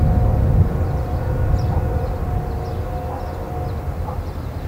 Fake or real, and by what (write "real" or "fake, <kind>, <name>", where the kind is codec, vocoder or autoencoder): real